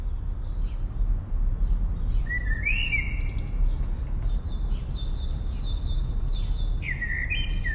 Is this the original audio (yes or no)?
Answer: yes